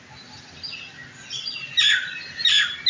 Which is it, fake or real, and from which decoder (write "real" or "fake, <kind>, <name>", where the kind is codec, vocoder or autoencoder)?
real